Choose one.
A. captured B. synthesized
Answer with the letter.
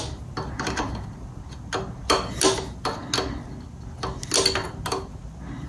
A